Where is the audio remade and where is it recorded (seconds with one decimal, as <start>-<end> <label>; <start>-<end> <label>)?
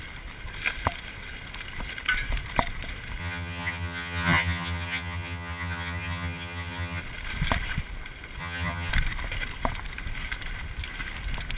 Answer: 0.0-3.2 recorded; 3.2-7.0 remade; 7.0-8.4 recorded; 8.4-8.9 remade; 8.9-11.6 recorded